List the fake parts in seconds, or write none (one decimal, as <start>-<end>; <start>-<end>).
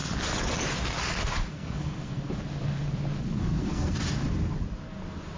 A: 1.5-2.2; 3.3-4.0